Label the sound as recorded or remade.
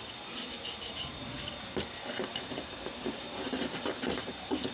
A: recorded